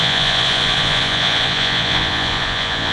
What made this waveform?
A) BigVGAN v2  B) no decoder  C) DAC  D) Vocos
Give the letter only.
D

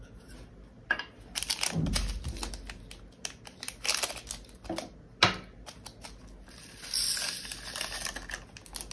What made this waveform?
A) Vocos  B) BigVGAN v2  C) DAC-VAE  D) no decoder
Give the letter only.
D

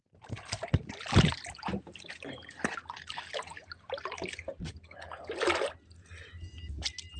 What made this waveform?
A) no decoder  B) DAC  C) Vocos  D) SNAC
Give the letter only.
A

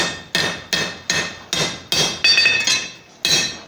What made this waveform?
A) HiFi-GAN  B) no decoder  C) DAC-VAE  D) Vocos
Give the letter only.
B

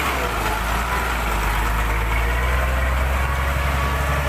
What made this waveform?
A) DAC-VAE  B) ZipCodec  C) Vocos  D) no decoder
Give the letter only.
D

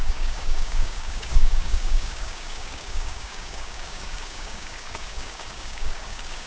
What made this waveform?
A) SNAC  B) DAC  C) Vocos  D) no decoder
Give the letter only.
B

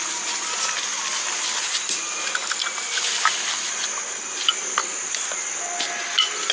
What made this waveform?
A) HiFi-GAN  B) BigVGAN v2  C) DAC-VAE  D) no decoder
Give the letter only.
D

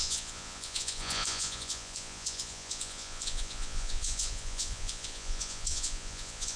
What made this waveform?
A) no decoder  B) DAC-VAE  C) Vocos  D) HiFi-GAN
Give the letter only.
C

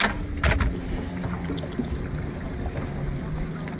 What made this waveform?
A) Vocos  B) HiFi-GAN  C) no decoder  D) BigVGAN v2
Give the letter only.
C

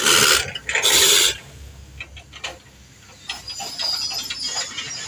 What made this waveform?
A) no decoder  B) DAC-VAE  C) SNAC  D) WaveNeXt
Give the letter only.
A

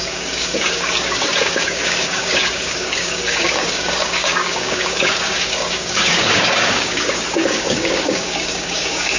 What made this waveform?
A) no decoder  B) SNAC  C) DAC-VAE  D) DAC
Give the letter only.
D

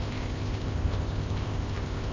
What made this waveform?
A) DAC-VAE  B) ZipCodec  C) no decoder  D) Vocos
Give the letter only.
B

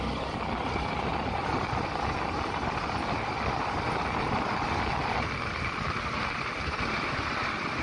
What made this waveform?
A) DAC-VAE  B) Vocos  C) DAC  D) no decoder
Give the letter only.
D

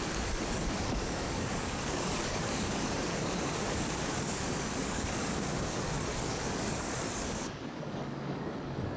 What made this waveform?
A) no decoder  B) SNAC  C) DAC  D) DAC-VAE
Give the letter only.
C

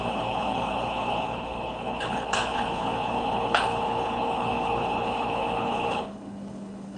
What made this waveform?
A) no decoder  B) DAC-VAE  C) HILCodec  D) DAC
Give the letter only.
C